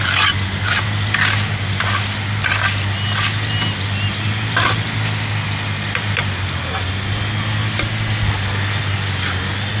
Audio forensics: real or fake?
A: real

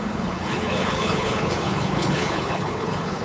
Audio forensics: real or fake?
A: fake